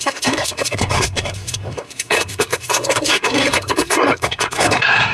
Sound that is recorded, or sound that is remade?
remade